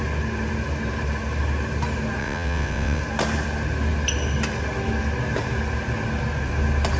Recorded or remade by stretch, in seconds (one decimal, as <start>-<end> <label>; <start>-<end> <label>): 0.0-2.2 recorded; 2.2-3.0 remade; 3.0-7.0 recorded